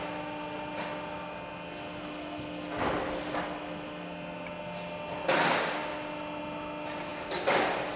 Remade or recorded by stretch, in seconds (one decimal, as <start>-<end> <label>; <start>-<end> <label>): 0.0-8.0 recorded